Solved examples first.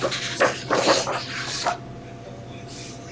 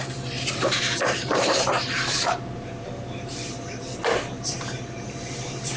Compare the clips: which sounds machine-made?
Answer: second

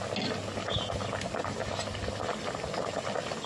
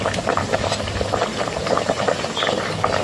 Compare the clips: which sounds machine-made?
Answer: second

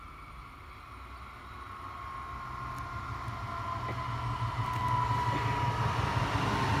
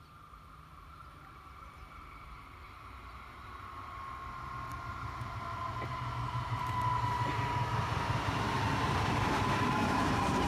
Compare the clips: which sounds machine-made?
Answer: second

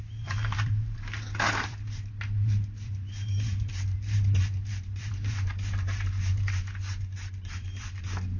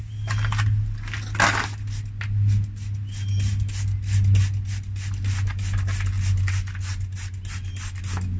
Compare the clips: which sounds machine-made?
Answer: first